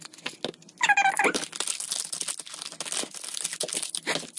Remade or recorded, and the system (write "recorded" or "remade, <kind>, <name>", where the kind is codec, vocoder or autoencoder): recorded